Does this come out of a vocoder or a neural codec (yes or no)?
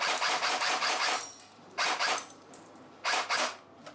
yes